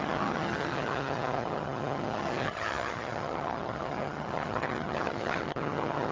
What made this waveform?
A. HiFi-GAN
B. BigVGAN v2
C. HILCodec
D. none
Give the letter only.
A